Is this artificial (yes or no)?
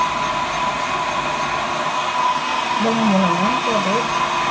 no